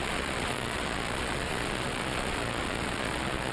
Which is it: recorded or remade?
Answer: remade